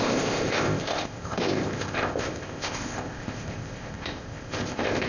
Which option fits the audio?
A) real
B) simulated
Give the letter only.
B